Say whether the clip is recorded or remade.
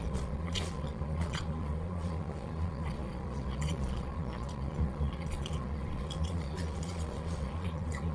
remade